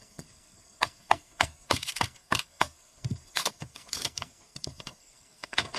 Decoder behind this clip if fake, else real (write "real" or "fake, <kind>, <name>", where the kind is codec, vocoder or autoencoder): fake, codec, SNAC